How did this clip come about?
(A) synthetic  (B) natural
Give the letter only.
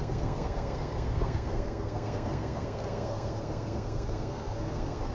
A